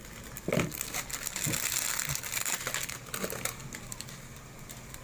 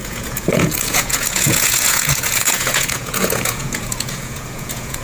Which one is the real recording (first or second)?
first